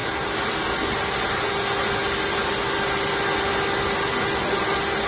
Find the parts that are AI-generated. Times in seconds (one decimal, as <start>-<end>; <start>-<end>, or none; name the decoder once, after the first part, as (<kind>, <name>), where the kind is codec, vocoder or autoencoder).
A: none